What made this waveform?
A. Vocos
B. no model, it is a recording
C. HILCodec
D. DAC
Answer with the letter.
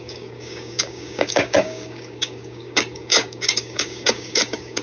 D